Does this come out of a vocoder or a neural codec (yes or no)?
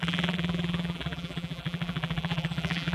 yes